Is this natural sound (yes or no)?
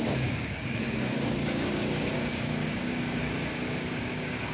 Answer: no